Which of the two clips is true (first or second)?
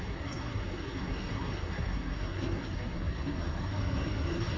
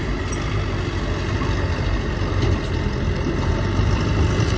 second